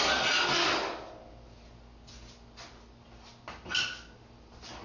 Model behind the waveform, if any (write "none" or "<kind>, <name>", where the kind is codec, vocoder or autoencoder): none